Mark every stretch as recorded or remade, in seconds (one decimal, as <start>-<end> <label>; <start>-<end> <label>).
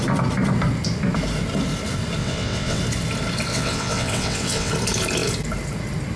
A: 0.0-2.2 recorded; 2.2-2.8 remade; 2.8-3.5 recorded; 3.5-4.7 remade; 4.7-6.2 recorded